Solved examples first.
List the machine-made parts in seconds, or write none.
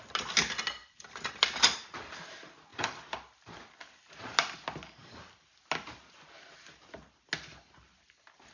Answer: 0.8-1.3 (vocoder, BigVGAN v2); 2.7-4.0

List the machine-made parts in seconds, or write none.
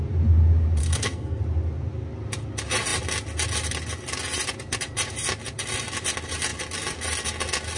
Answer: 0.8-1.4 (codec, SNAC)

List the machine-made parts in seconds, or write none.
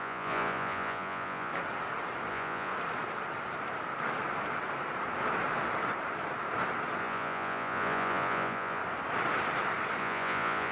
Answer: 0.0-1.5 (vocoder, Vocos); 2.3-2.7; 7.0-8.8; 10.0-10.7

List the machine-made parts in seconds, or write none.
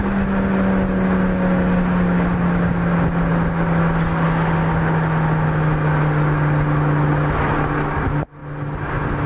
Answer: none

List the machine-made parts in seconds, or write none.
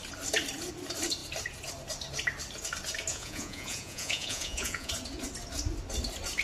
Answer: 3.1-4.9 (vocoder, Vocos)